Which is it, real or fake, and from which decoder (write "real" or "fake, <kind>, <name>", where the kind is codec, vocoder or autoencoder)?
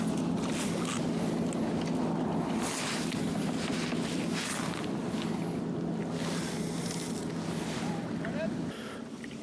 real